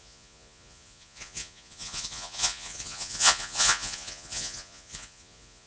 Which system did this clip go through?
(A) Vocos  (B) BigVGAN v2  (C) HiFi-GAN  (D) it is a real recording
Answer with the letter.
A